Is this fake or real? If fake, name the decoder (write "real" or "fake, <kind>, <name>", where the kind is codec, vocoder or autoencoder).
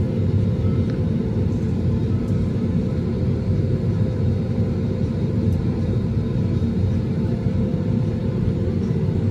fake, vocoder, BigVGAN v2